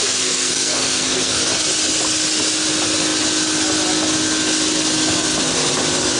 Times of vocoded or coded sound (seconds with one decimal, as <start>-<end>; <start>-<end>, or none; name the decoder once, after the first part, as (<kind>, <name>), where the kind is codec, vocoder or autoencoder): 0.0-1.4 (codec, SNAC)